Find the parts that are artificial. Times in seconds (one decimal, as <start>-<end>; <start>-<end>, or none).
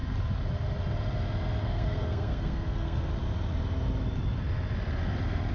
1.6-3.1